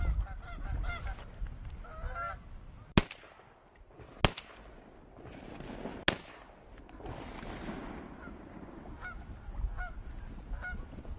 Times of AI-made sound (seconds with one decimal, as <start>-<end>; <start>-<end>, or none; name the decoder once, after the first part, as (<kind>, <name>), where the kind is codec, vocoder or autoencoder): none

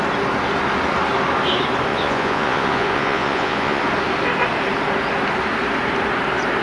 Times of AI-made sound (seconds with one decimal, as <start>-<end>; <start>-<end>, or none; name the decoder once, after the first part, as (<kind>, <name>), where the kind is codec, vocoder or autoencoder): 1.9-3.8 (vocoder, Vocos)

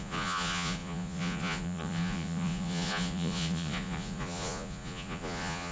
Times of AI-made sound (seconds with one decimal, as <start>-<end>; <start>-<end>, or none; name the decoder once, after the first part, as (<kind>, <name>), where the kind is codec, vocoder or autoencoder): 0.0-5.7 (vocoder, Vocos)

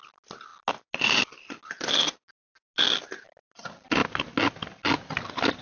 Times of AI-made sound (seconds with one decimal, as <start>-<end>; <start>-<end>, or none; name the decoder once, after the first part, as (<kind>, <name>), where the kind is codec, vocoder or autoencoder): none

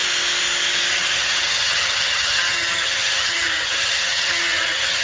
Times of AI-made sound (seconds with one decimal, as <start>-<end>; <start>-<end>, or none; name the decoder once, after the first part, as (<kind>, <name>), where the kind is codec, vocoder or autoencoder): 0.9-5.0 (vocoder, HiFi-GAN)

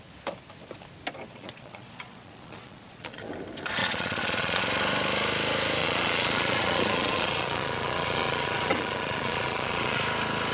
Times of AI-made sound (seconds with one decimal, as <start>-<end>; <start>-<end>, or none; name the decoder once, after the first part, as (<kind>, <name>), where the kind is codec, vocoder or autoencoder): 1.3-3.3 (vocoder, Vocos); 3.8-4.6; 5.8-10.0